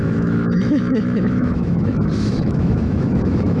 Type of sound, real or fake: fake